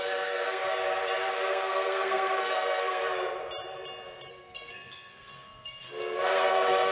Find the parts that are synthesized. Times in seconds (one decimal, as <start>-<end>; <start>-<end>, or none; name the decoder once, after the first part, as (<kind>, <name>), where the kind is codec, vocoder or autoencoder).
0.0-0.6 (codec, SNAC); 1.3-3.0; 4.3-6.9